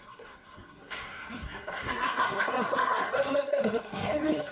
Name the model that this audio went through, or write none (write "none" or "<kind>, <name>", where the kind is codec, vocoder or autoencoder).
codec, SNAC